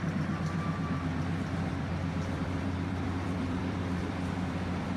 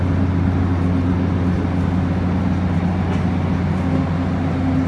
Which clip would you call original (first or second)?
second